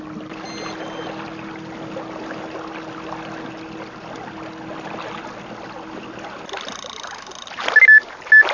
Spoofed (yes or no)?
no